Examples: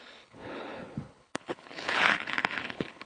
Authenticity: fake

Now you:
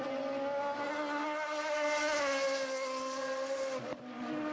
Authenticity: real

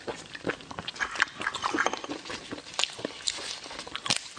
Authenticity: real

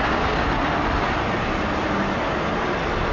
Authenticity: real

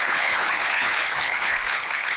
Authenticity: fake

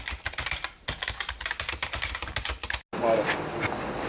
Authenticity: real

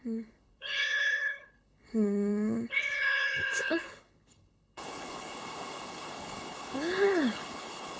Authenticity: fake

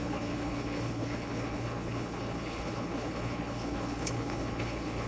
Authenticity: fake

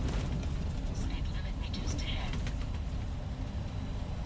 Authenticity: real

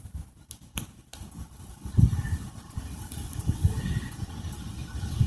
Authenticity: real